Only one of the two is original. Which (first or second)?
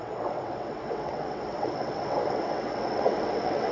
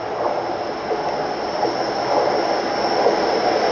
second